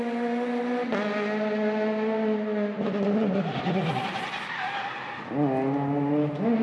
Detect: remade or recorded recorded